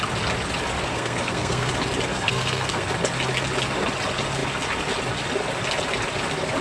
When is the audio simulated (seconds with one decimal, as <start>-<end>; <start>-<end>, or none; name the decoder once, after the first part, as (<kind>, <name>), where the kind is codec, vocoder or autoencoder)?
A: 0.9-1.7 (codec, SNAC); 2.1-2.8